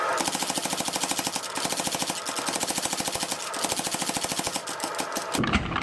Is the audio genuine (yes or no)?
yes